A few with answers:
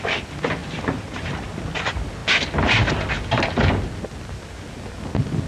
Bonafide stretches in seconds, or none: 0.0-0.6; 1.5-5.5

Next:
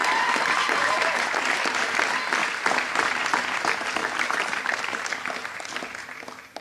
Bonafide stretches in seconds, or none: 1.6-4.0; 5.0-6.6

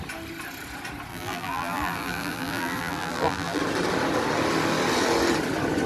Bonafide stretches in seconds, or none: 0.0-1.1; 3.6-5.9

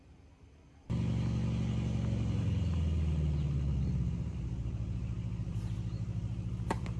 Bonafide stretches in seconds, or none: 0.0-5.5

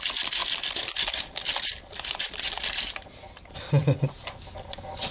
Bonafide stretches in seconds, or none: 0.0-3.8; 4.3-5.1

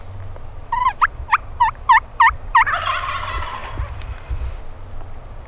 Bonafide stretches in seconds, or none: 0.0-0.6; 3.1-3.6; 4.6-5.5

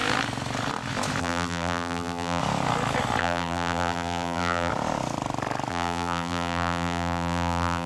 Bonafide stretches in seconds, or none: 0.0-1.2; 2.4-3.2; 4.7-5.7

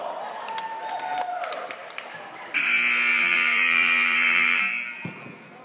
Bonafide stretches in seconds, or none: 0.0-3.1; 4.6-5.6